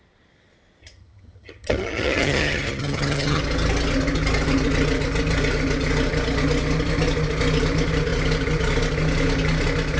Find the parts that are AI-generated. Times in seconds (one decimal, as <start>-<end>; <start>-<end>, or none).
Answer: 0.8-3.4